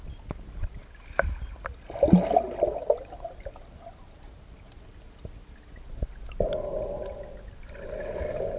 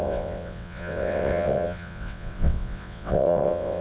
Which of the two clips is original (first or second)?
first